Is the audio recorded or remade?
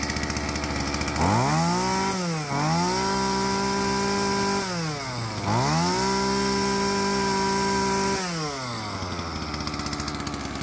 recorded